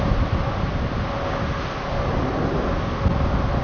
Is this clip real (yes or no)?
yes